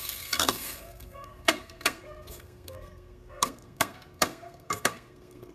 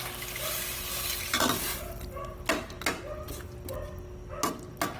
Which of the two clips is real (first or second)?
second